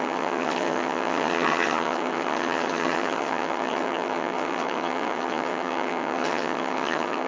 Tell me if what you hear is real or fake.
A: fake